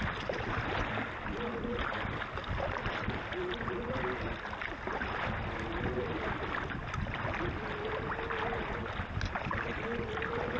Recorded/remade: recorded